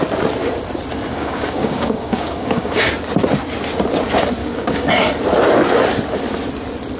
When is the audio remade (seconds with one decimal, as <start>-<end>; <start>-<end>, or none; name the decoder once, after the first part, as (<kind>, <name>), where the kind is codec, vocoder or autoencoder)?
1.1-2.9 (codec, DAC); 4.4-4.9